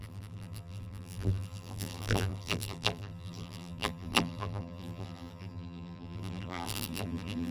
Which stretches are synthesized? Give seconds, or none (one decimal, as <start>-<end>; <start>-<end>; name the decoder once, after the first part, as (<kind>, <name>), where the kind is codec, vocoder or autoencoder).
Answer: 0.0-7.5 (vocoder, BigVGAN v2)